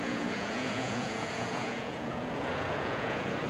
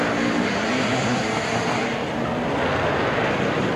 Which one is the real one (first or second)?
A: second